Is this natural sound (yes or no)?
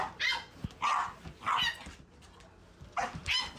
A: yes